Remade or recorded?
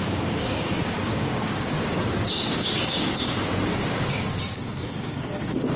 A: remade